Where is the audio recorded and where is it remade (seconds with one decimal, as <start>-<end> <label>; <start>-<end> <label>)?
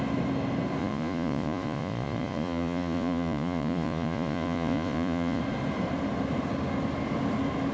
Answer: 0.0-0.8 recorded; 0.8-5.4 remade; 5.4-7.7 recorded